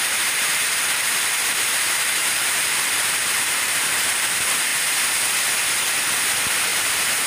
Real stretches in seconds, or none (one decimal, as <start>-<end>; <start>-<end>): 4.7-6.1